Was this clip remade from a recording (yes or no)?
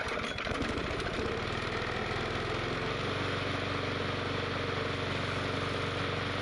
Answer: no